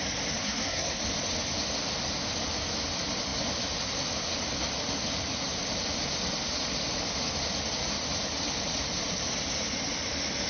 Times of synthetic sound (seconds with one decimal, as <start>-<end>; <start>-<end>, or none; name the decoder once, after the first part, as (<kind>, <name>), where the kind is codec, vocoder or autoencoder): 0.4-1.0 (codec, SNAC)